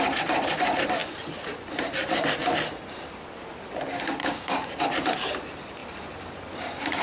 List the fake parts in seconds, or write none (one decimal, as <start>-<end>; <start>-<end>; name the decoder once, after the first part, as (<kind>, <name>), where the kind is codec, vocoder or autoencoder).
4.2-4.8 (codec, DAC)